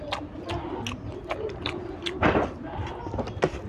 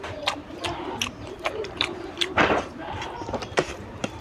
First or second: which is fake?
second